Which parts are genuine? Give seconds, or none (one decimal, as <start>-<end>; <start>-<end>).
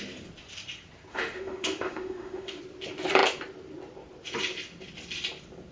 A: 0.0-1.1; 2.6-5.7